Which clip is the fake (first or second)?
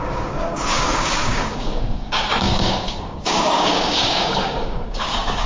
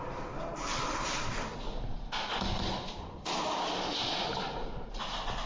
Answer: first